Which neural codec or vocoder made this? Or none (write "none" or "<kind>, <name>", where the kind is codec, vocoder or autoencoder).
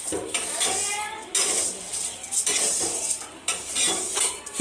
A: none